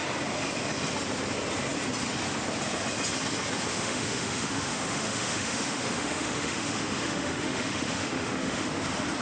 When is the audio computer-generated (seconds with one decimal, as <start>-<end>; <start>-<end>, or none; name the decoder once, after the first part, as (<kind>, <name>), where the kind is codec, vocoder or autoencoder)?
3.7-8.7 (autoencoder, DAC-VAE)